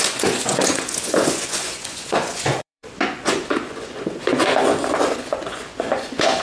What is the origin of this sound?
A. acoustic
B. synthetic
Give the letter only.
B